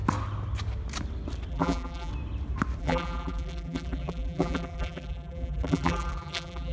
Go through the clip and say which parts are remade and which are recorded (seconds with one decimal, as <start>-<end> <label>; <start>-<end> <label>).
0.0-1.5 recorded; 1.5-2.1 remade; 2.1-2.8 recorded; 2.8-6.7 remade